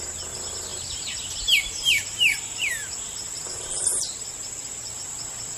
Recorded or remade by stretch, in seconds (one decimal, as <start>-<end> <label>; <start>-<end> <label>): 0.0-0.7 recorded; 0.7-3.1 remade; 3.1-5.6 recorded